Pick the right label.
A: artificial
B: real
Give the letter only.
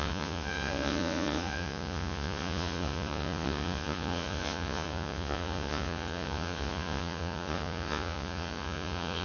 A